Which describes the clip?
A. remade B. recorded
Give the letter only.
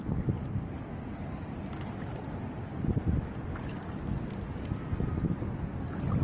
B